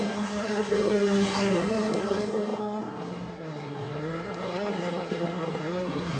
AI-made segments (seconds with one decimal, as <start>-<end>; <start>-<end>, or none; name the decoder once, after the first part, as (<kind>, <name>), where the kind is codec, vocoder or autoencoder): 0.0-6.2 (codec, SNAC)